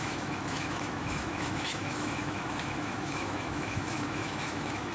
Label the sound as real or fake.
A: fake